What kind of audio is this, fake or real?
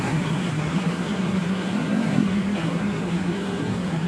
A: fake